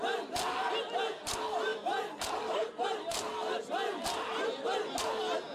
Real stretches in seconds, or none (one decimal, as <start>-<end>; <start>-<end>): 0.0-5.5